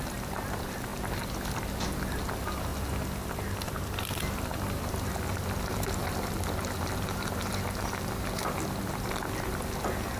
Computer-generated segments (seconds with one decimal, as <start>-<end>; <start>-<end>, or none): none